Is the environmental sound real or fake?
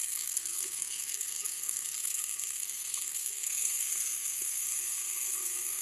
fake